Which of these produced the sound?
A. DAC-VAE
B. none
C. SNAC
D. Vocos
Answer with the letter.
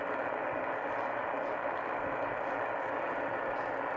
B